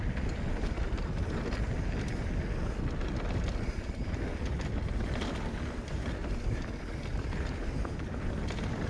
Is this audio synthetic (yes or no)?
no